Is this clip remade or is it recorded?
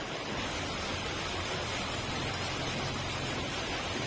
remade